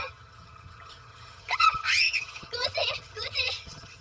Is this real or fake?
fake